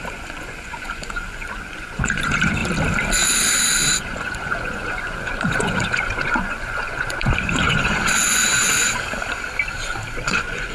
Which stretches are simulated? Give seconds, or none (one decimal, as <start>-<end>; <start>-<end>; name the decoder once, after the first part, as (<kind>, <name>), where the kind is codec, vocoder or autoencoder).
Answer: 0.0-2.6 (vocoder, Vocos); 3.9-8.9; 10.2-10.7